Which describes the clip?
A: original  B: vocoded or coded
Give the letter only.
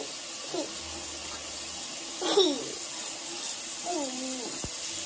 A